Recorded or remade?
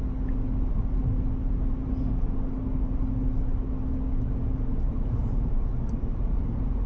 recorded